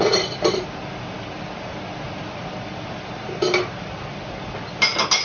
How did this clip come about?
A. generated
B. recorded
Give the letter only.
B